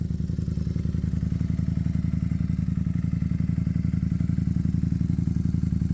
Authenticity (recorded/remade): recorded